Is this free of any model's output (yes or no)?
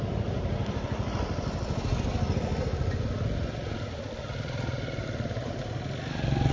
yes